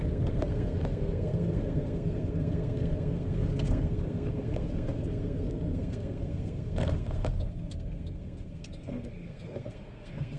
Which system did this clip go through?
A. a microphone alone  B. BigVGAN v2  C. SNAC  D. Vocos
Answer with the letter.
C